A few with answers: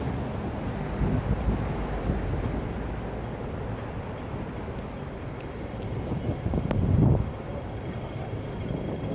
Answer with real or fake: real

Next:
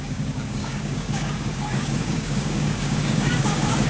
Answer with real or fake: fake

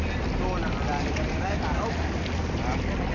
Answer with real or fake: real